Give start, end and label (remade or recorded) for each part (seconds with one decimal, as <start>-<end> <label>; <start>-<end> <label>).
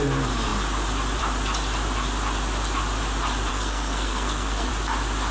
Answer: 0.0-3.5 recorded; 3.5-4.7 remade; 4.7-5.3 recorded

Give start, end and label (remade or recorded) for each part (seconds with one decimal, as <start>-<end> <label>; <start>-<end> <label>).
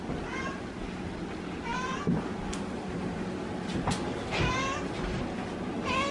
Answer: 0.0-6.1 recorded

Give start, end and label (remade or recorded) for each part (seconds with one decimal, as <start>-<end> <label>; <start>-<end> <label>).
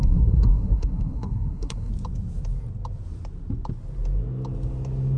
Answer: 0.0-1.9 remade; 1.9-5.2 recorded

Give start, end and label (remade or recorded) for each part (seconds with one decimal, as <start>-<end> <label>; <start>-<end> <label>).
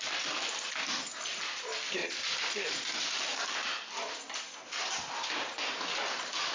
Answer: 0.0-6.5 recorded